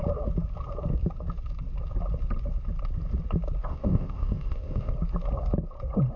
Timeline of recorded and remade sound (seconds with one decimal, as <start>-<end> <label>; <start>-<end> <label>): 0.0-3.7 recorded; 3.7-4.9 remade; 4.9-6.2 recorded